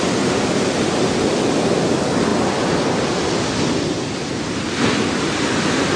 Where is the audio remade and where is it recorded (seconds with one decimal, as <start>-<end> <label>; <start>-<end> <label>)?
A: 0.0-6.0 recorded